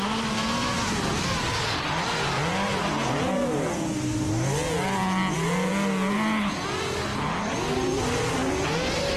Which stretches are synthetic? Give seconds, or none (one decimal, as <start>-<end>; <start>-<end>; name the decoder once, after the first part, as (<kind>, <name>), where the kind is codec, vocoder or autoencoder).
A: none